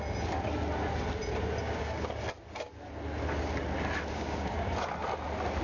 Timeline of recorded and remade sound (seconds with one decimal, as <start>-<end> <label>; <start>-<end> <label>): 0.0-1.6 recorded; 1.6-2.2 remade; 2.2-4.1 recorded; 4.1-4.7 remade; 4.7-5.6 recorded